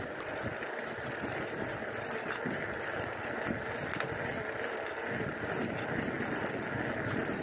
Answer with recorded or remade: recorded